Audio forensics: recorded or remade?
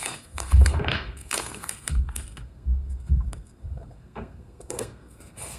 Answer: remade